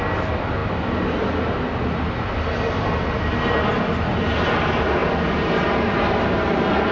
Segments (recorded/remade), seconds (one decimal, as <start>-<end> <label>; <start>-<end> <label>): 0.0-6.9 recorded